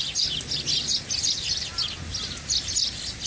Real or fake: real